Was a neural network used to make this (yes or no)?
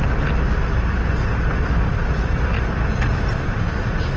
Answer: no